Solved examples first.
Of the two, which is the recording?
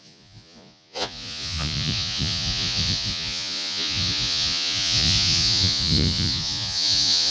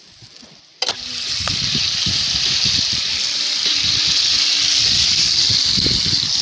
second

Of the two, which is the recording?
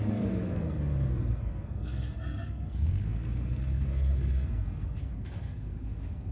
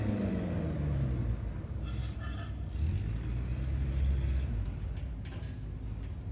second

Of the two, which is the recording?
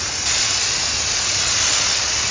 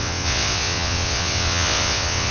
first